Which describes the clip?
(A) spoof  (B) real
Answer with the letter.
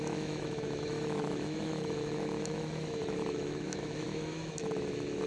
A